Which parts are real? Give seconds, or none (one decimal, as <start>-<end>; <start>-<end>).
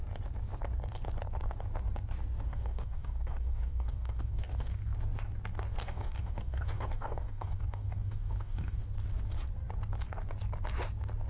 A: 0.0-2.5; 4.8-5.8; 8.8-11.3